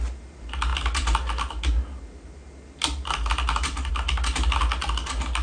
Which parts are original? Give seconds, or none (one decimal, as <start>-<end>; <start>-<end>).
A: 0.0-5.4